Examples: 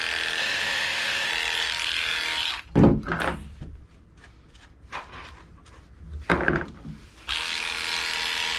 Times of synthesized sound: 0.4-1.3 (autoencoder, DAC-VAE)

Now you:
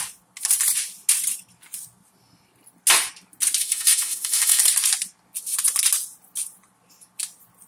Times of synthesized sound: 3.6-4.6 (autoencoder, DAC-VAE)

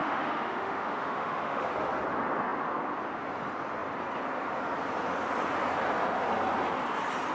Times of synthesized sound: 0.0-1.7 (autoencoder, DAC-VAE)

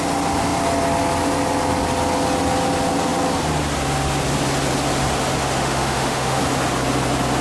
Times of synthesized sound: 5.6-6.4 (autoencoder, DAC-VAE)